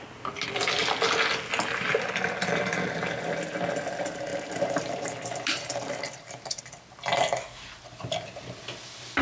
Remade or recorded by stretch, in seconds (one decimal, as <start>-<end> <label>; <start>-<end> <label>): 0.0-4.3 recorded; 4.3-6.6 remade; 6.6-9.2 recorded